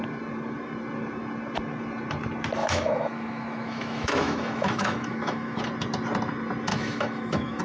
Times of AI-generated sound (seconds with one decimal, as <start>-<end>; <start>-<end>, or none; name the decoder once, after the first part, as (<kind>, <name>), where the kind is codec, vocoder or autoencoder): 2.6-5.6 (autoencoder, DAC-VAE); 6.7-7.6